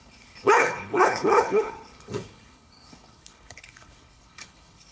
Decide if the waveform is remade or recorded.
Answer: remade